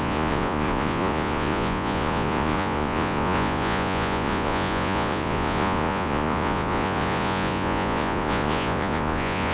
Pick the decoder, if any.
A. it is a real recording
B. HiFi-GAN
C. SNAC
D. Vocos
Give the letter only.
D